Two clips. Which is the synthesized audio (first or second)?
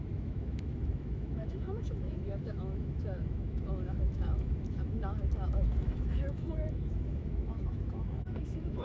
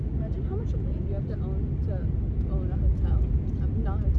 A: first